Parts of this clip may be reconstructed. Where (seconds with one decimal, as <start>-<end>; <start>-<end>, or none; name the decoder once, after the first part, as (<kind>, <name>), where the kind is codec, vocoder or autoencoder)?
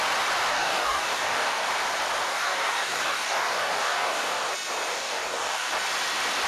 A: 0.5-1.7 (codec, DAC); 2.3-4.5; 4.9-5.7